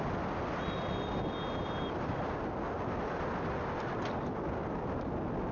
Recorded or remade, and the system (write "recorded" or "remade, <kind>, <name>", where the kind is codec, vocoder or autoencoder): recorded